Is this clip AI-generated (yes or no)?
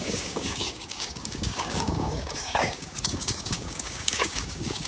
yes